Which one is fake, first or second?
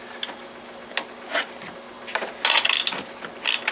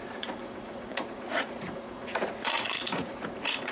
second